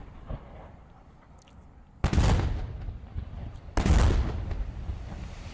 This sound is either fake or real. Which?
real